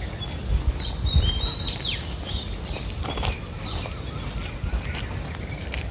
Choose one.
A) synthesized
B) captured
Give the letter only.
B